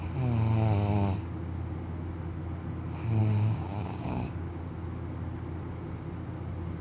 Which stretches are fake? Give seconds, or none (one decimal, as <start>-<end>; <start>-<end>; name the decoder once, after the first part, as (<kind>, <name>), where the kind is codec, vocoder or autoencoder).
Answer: 3.2-4.3 (codec, DAC)